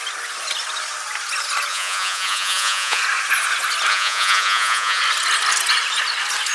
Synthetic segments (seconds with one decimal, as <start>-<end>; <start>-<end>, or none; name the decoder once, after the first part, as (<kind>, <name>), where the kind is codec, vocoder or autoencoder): 1.7-3.0 (vocoder, Vocos); 3.9-5.0